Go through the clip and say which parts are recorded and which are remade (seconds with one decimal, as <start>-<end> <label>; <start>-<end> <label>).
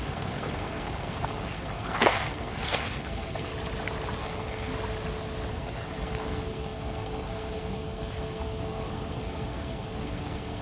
0.0-3.5 remade; 3.5-4.2 recorded; 4.2-4.7 remade; 4.7-5.5 recorded; 5.5-10.6 remade